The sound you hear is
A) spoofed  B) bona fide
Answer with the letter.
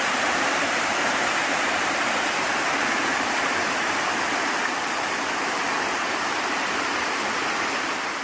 A